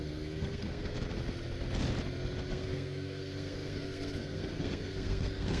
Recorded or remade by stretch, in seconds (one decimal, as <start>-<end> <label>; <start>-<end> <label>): 0.0-0.9 remade; 0.9-2.5 recorded; 2.5-5.6 remade